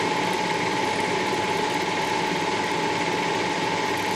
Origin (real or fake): real